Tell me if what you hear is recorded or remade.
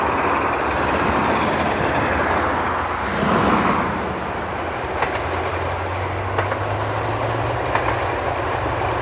recorded